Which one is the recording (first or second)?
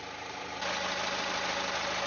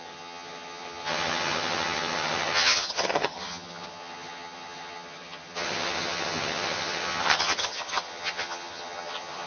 first